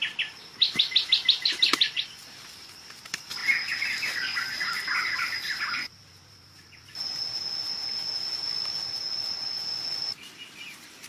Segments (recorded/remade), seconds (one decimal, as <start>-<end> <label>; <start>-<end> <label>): 0.0-11.1 recorded